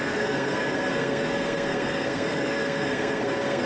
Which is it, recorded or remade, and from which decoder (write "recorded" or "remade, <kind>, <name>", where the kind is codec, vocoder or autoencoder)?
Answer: remade, codec, SNAC